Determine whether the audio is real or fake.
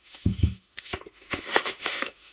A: fake